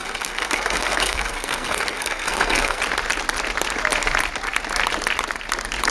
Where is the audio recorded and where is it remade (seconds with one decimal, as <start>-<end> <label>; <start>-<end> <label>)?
0.0-2.8 remade; 2.8-5.9 recorded